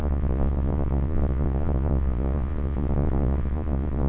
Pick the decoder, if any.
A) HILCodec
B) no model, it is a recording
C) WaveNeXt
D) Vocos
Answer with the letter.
D